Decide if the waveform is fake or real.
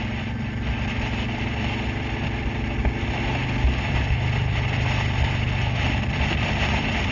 real